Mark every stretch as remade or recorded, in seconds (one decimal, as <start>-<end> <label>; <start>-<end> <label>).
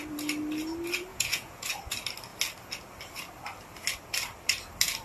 0.0-1.1 recorded; 1.1-1.7 remade; 1.7-5.0 recorded